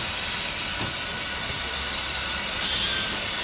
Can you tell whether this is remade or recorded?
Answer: recorded